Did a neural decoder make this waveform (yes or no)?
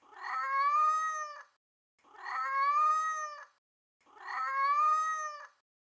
no